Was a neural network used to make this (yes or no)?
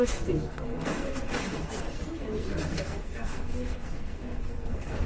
yes